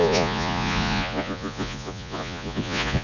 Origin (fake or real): fake